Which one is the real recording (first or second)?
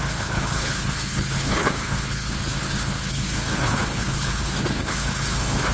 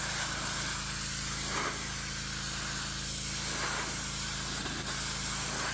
second